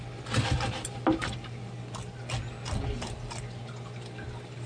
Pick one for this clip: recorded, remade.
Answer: recorded